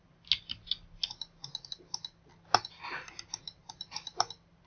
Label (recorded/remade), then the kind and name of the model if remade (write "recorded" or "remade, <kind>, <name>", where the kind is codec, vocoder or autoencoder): recorded